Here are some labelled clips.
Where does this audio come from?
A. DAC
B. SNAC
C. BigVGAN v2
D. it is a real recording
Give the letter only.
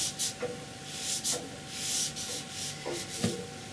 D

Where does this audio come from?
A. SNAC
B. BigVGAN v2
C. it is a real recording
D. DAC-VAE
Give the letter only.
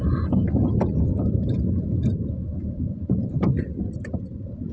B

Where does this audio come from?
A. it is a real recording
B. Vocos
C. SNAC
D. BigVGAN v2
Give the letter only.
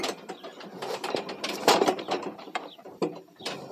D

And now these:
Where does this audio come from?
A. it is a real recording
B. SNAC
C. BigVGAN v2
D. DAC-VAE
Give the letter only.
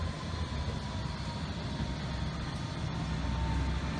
A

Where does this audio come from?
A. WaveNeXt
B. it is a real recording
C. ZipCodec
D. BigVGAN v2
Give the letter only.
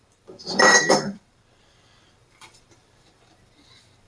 D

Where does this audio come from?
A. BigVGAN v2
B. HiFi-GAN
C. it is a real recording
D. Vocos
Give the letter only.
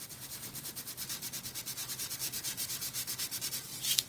A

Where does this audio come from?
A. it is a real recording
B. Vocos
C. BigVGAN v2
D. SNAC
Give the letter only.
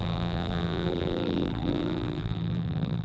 C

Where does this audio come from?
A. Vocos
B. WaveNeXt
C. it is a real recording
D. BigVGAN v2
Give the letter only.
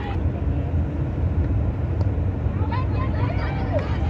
D